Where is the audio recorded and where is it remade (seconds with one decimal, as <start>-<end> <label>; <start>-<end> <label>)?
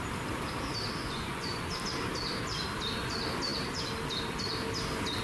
0.0-1.0 recorded; 1.0-1.6 remade; 1.6-5.2 recorded